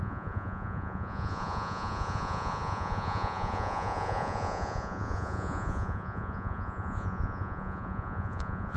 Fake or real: fake